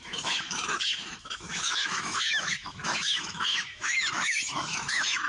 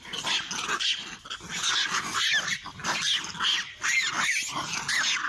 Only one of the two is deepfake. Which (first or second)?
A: first